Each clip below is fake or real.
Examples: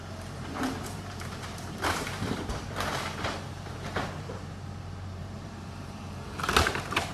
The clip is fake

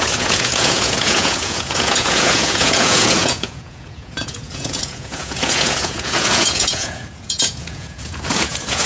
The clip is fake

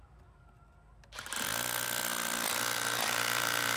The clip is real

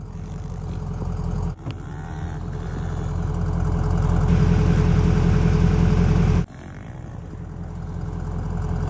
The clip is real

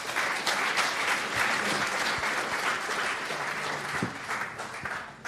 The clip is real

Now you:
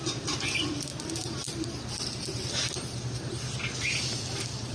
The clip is real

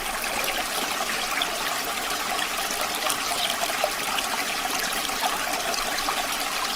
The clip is real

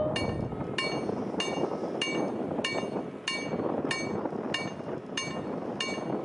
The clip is real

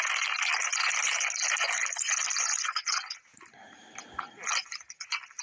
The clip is real